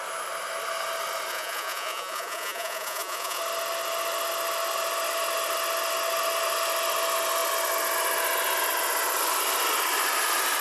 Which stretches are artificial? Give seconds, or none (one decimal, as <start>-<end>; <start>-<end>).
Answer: 1.3-3.4